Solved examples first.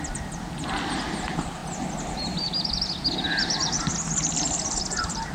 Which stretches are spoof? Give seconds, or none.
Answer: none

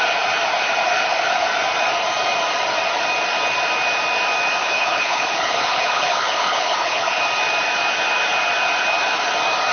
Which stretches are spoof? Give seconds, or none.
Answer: 4.6-7.2

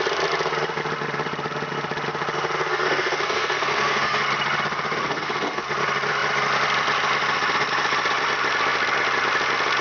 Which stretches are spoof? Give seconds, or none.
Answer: 2.7-4.2; 5.0-5.6

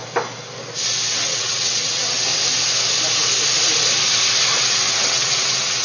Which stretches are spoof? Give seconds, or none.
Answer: 1.1-2.3; 4.6-5.8

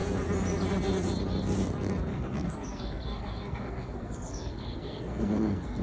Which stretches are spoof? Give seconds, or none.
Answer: 2.1-5.8